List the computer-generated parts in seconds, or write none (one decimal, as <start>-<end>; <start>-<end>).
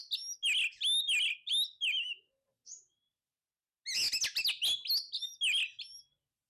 none